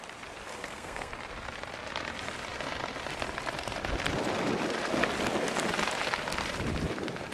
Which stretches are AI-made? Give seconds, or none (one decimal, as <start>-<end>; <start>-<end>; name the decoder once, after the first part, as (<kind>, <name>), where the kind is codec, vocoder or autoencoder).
0.5-1.1 (codec, SNAC)